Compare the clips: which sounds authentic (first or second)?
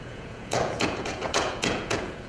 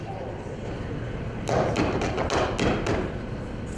second